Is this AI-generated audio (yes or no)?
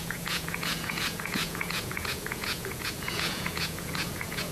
yes